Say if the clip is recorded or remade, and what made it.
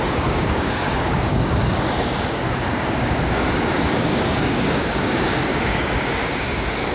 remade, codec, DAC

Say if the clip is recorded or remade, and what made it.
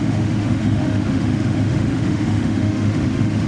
remade, autoencoder, DAC-VAE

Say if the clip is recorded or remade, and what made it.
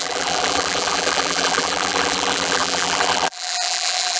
remade, vocoder, BigVGAN v2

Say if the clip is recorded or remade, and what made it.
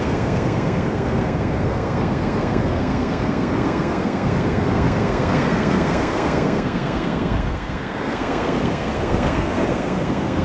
remade, codec, SNAC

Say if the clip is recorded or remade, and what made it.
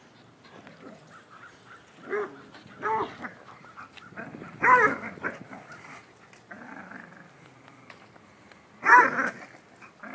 recorded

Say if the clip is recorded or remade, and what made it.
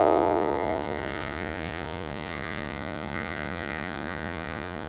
remade, vocoder, Vocos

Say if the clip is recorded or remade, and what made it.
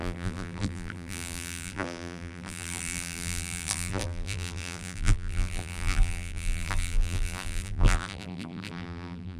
remade, vocoder, BigVGAN v2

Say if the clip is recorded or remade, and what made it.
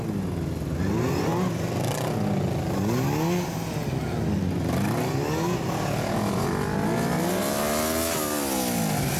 recorded